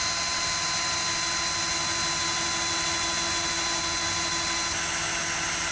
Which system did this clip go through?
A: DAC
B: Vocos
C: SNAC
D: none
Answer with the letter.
D